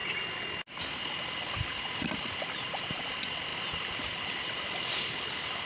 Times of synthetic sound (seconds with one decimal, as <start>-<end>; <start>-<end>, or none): none